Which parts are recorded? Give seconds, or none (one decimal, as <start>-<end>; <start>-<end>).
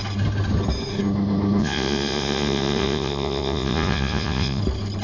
0.0-1.6; 4.6-5.0